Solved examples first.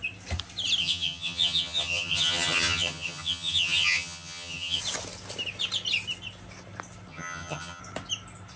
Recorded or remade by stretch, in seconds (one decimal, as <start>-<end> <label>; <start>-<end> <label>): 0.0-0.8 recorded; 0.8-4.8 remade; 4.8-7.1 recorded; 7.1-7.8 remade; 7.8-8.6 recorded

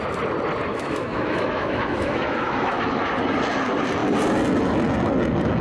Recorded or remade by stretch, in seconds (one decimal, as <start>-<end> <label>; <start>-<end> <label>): 0.0-0.7 recorded; 0.7-2.8 remade; 2.8-5.6 recorded

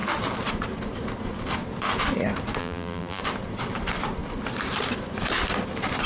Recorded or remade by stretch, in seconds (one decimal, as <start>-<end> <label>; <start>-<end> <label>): 0.0-2.6 recorded; 2.6-3.2 remade; 3.2-6.1 recorded

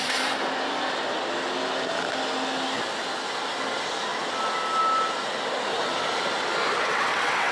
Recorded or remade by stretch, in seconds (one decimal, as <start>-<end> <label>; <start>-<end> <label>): 0.0-6.9 recorded; 6.9-7.5 remade

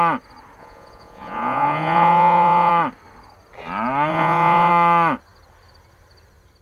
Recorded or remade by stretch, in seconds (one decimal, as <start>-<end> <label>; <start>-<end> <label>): 0.0-0.6 recorded; 0.6-2.7 remade; 2.7-4.1 recorded; 4.1-4.7 remade; 4.7-6.6 recorded

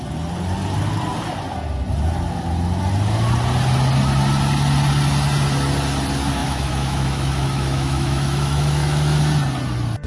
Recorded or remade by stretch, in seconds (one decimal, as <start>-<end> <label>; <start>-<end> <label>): 0.0-6.4 recorded; 6.4-9.2 remade; 9.2-10.1 recorded

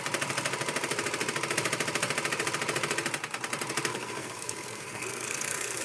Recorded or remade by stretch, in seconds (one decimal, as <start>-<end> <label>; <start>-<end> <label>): 0.0-3.9 recorded; 3.9-5.8 remade